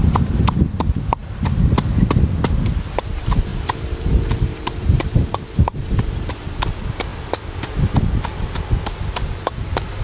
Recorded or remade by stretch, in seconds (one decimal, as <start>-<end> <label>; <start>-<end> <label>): 0.0-3.5 recorded; 3.5-6.3 remade; 6.3-10.0 recorded

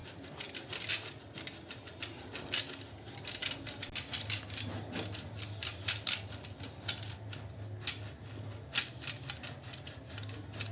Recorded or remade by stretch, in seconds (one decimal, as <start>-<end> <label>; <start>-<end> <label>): 0.0-10.7 recorded

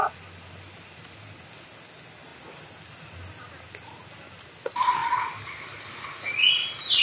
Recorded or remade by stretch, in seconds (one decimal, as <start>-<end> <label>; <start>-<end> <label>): 0.0-7.0 recorded